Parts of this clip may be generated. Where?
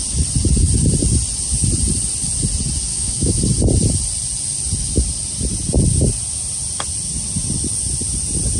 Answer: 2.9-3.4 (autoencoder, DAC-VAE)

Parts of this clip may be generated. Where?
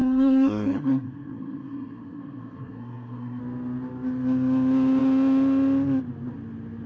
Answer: 0.0-3.4 (codec, SNAC)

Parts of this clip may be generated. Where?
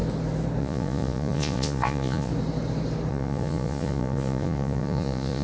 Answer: 0.6-2.3 (vocoder, Vocos); 3.1-5.4